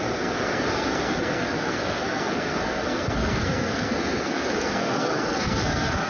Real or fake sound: fake